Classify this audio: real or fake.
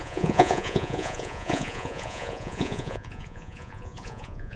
fake